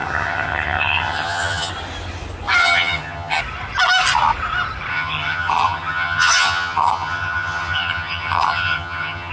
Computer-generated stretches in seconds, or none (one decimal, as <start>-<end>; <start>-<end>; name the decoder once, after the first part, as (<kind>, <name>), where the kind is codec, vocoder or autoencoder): 0.0-1.7 (vocoder, HiFi-GAN); 2.6-3.4; 4.9-9.3